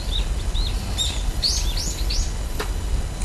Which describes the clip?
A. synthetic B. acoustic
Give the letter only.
B